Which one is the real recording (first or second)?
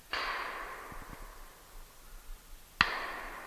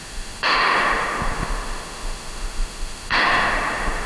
first